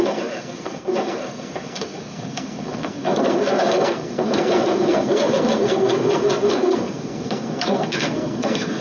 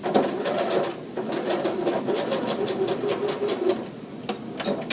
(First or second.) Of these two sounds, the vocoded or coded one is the first